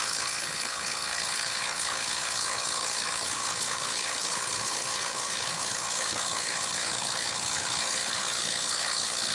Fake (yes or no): yes